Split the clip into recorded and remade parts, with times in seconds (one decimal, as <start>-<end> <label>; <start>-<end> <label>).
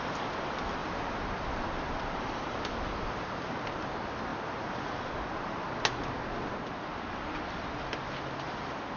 0.0-0.8 recorded; 0.8-3.9 remade; 3.9-4.3 recorded; 4.3-5.7 remade; 5.7-9.0 recorded